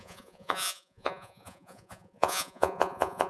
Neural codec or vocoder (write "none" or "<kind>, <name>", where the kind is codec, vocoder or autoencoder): vocoder, Vocos